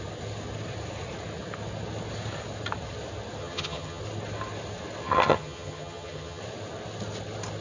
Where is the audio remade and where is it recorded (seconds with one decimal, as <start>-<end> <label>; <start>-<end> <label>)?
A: 0.0-3.4 recorded; 3.4-4.0 remade; 4.0-5.0 recorded; 5.0-6.4 remade; 6.4-7.6 recorded